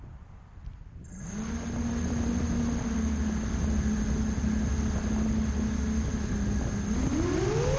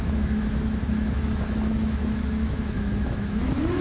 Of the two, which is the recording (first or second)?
first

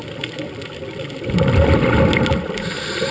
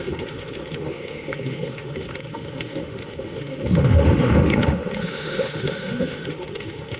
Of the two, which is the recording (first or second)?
first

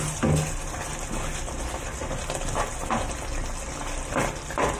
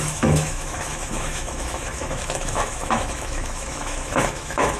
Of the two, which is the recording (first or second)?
first